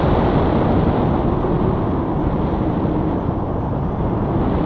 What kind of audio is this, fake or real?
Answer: real